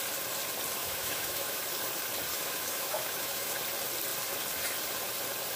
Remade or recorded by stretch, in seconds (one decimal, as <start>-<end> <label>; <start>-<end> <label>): 0.0-0.8 recorded; 0.8-1.6 remade; 1.6-2.3 recorded; 2.3-3.5 remade; 3.5-5.6 recorded